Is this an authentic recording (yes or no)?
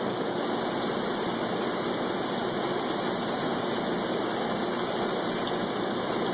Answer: yes